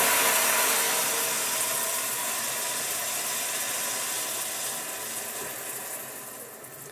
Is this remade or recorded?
recorded